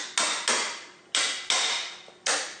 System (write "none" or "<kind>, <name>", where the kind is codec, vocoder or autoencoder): none